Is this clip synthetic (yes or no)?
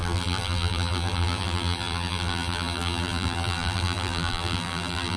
yes